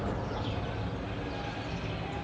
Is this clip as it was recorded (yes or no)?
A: yes